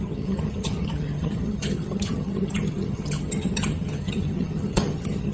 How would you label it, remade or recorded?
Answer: remade